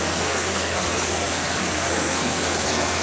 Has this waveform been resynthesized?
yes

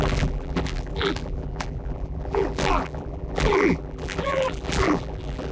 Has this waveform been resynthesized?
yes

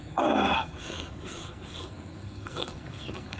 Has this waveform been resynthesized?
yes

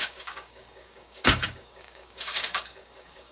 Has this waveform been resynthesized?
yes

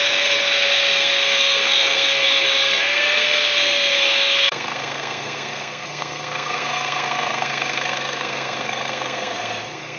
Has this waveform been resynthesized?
yes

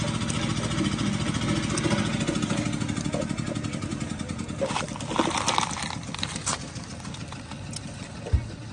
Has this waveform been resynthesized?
no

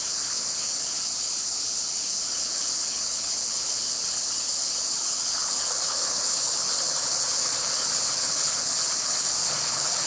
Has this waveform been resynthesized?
yes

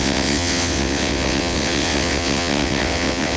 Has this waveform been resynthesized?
yes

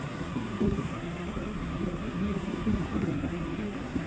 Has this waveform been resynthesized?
yes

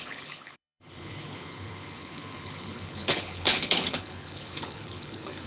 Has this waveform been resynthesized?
yes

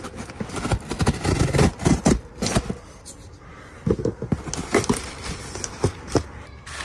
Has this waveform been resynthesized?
no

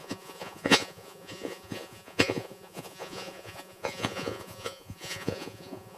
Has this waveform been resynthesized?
yes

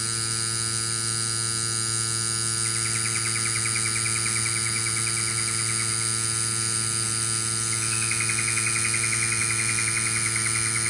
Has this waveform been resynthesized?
no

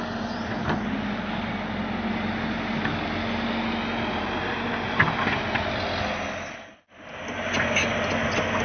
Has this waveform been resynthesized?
no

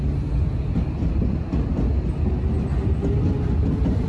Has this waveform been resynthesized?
no